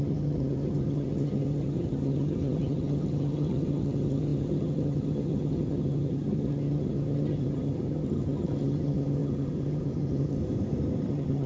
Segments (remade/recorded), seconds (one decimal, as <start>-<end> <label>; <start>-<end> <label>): 0.0-10.4 remade; 10.4-11.1 recorded; 11.1-11.5 remade